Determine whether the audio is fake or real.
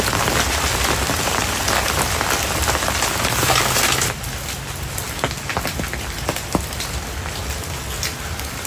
real